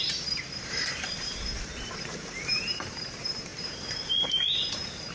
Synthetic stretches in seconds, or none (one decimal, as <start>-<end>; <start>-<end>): 0.0-5.1